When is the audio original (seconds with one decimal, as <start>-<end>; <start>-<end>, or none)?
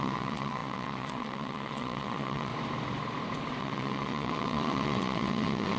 2.5-3.6